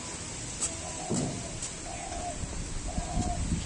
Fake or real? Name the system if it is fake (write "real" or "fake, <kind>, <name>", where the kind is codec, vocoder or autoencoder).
real